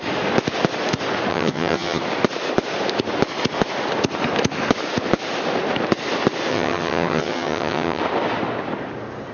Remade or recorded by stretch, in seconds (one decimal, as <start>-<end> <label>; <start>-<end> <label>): 0.0-1.3 recorded; 1.3-2.0 remade; 2.0-6.5 recorded; 6.5-8.0 remade; 8.0-9.3 recorded